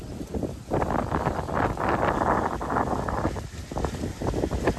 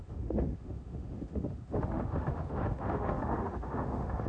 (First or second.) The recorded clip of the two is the first